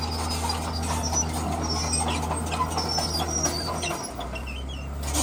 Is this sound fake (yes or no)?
no